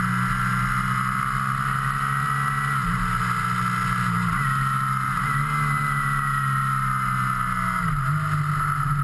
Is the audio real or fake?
real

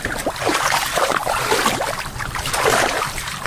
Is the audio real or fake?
fake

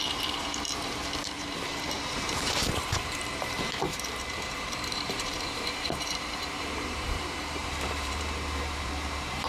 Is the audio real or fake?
fake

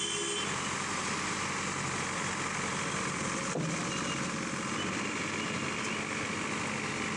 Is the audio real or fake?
real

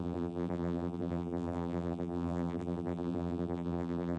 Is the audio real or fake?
fake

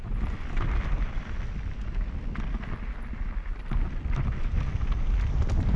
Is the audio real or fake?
real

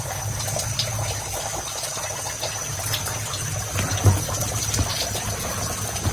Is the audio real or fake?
real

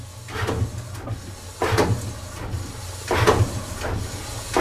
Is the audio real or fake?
real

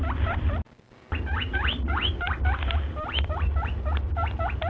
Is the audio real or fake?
real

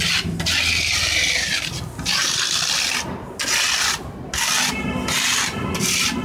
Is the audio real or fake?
real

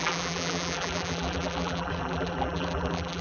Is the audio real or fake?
fake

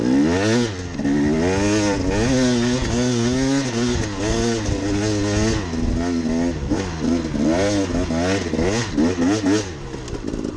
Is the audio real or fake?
real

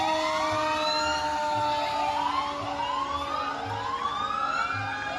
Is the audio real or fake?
real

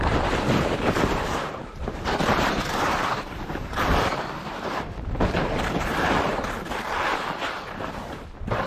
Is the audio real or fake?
fake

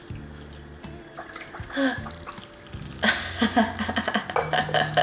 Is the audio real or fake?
real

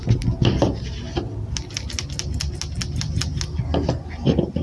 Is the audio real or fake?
real